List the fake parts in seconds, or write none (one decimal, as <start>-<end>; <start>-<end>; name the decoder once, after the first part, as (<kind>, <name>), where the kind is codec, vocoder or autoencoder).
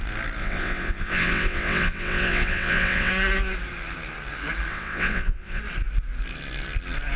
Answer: 0.4-3.1 (vocoder, WaveNeXt); 4.7-5.6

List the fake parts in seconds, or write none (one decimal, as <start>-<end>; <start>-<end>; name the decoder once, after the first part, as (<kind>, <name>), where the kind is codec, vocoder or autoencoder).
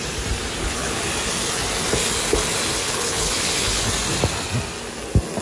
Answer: 0.6-1.1 (codec, HILCodec); 2.8-3.9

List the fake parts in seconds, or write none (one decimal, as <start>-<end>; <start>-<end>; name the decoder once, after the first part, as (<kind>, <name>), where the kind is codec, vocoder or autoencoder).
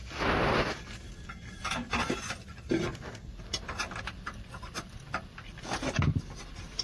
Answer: 0.0-2.9 (vocoder, BigVGAN v2); 4.0-6.8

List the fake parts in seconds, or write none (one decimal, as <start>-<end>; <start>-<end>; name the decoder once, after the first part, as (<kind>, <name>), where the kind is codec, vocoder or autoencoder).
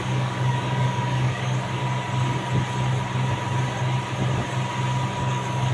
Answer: 0.0-1.8 (codec, DAC); 5.2-5.7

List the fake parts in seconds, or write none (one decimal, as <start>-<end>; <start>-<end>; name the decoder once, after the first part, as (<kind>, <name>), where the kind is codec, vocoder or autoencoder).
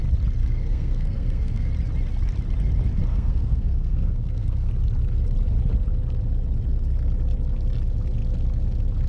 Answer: 0.4-1.7 (codec, SNAC); 3.1-4.7